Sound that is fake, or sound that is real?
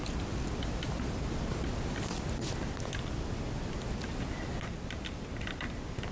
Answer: real